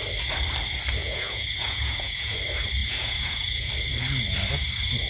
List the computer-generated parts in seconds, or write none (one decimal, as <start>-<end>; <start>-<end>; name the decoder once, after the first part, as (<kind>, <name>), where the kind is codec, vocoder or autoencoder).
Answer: 1.0-2.4 (vocoder, Vocos); 2.8-3.7